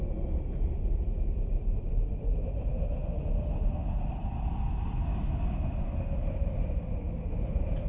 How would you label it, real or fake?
real